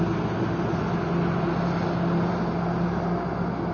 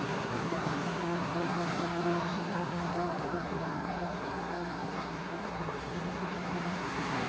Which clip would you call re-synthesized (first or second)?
second